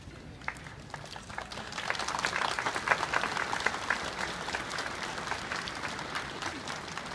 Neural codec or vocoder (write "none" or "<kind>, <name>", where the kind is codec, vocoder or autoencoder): none